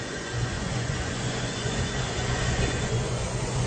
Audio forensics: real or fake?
fake